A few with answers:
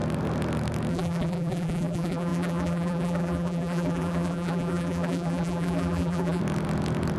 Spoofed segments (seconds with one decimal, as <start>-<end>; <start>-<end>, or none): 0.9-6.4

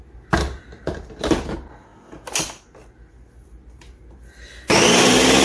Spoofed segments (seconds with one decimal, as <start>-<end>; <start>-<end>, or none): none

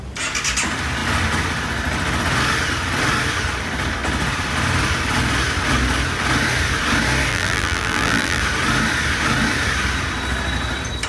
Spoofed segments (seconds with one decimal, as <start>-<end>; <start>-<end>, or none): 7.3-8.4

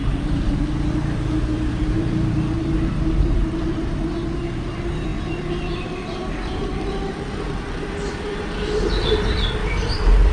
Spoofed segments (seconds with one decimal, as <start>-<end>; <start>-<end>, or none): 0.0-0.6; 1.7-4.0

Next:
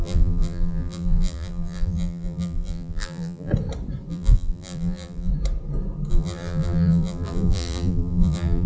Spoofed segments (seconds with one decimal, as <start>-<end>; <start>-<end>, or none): 0.0-3.5; 4.1-5.3; 6.1-8.7